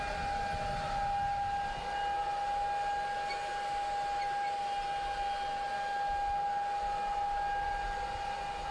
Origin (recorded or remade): recorded